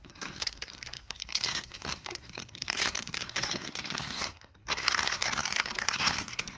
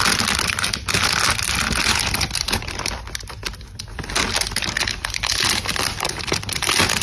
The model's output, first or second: first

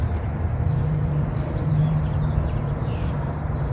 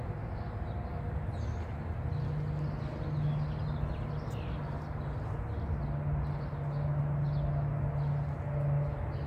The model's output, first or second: first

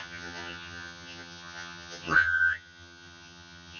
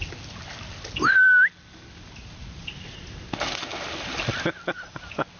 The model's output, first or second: first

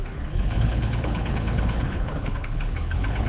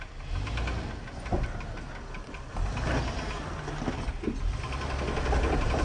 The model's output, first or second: first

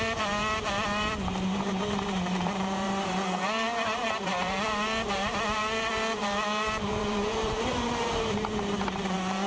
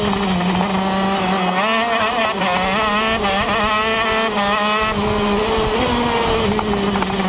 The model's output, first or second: first